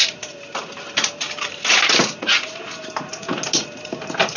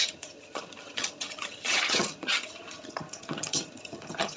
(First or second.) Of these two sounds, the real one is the first